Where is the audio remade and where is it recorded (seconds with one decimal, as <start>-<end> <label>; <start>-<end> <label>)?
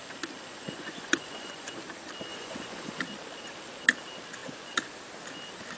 0.0-0.5 recorded; 0.5-1.7 remade; 1.7-2.3 recorded; 2.3-3.0 remade; 3.0-4.4 recorded; 4.4-4.9 remade; 4.9-5.8 recorded